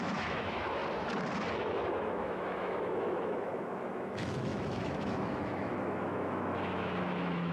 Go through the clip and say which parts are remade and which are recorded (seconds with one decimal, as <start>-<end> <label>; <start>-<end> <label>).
0.0-0.8 remade; 0.8-1.5 recorded; 1.5-7.5 remade